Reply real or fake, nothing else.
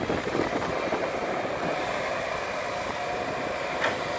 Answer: real